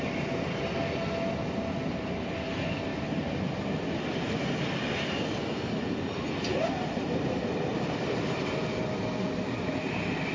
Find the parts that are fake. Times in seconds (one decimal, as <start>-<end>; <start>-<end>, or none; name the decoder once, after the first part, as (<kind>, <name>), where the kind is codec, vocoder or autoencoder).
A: none